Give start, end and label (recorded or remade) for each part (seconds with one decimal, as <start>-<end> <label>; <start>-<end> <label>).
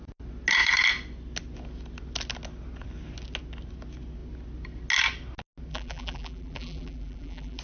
0.0-5.7 recorded; 5.7-7.6 remade